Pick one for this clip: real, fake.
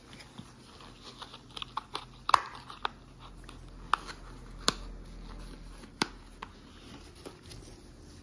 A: real